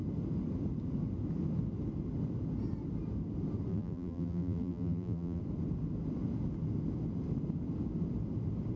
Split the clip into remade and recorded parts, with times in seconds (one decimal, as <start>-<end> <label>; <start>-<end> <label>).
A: 0.0-3.7 recorded; 3.7-5.4 remade; 5.4-8.8 recorded